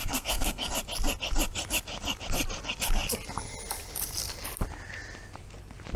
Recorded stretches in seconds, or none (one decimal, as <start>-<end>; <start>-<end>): 0.7-6.0